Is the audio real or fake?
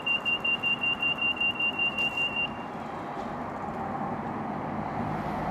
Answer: real